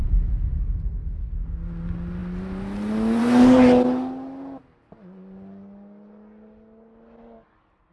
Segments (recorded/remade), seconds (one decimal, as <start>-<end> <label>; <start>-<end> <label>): 0.0-7.9 recorded